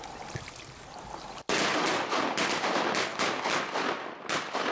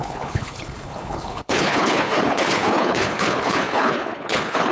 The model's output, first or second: second